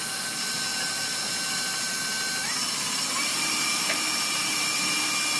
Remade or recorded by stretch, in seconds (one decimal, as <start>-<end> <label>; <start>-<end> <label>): 0.0-3.3 recorded; 3.3-4.8 remade; 4.8-5.4 recorded